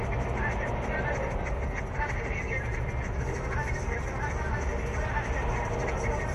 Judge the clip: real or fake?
real